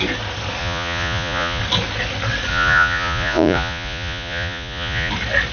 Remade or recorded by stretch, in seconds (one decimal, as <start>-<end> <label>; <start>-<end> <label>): 0.0-0.6 recorded; 0.6-1.6 remade; 1.6-2.5 recorded; 2.5-5.1 remade; 5.1-5.5 recorded